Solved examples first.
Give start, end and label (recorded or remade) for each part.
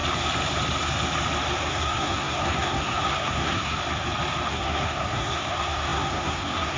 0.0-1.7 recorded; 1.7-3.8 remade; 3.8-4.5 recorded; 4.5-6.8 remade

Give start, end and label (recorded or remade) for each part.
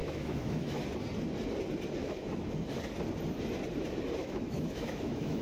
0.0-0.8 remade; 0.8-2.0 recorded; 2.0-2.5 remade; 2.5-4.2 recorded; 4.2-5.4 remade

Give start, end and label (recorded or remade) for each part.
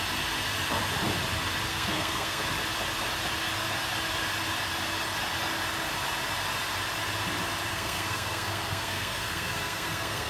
0.0-1.7 recorded; 1.7-2.4 remade; 2.4-7.7 recorded; 7.7-10.3 remade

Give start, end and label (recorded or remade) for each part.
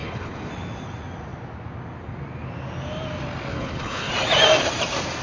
0.0-0.5 remade; 0.5-3.5 recorded; 3.5-4.1 remade; 4.1-5.2 recorded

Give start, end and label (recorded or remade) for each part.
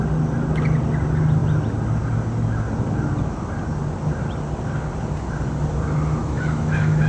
0.0-6.2 recorded; 6.2-7.1 remade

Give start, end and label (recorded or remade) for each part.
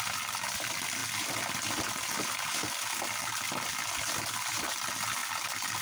0.0-5.8 recorded